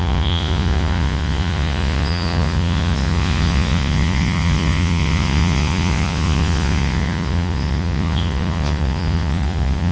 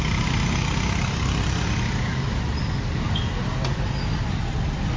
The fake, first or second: first